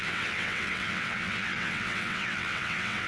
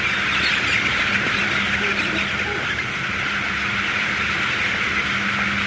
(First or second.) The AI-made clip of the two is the first